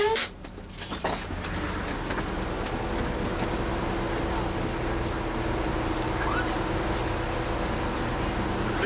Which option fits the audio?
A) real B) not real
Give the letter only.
A